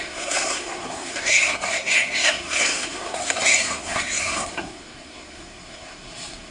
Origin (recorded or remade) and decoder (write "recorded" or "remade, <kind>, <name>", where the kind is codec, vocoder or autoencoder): remade, codec, SNAC